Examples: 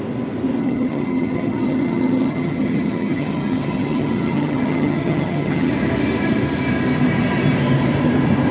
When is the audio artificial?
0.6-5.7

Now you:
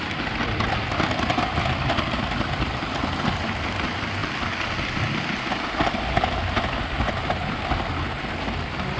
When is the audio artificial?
none

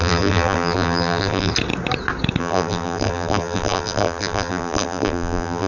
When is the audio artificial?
0.0-1.5; 2.4-5.7

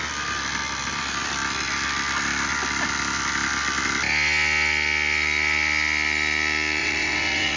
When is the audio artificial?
6.8-7.6

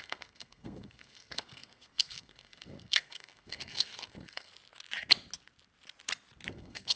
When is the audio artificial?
0.0-4.5; 6.5-7.0

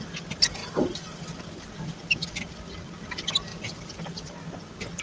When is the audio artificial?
none

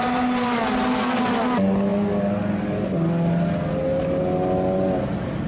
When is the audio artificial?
none